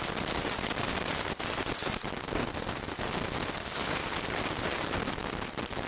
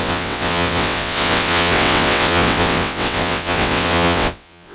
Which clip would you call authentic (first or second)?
first